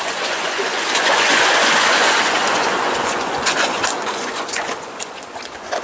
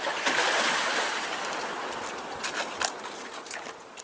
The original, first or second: second